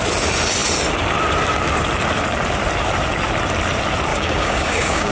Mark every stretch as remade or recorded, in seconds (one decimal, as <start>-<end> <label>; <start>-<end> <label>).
0.0-4.1 recorded; 4.1-5.1 remade